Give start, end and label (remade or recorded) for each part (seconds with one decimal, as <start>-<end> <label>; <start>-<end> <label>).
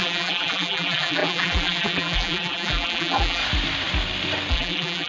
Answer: 0.0-3.4 remade; 3.4-4.5 recorded; 4.5-5.1 remade